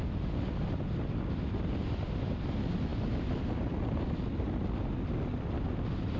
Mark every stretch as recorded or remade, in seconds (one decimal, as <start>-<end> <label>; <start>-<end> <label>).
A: 0.0-6.2 recorded